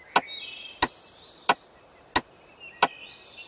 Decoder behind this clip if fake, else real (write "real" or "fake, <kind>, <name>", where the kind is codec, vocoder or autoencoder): real